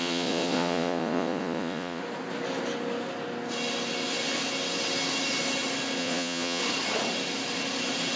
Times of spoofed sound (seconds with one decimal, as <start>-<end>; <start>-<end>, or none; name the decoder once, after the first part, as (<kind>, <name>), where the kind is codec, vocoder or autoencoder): 0.0-2.0 (vocoder, Vocos); 6.0-6.6